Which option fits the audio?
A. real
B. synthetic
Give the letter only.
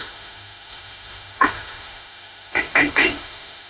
B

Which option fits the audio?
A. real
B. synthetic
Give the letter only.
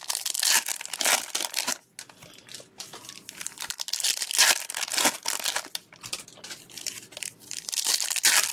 A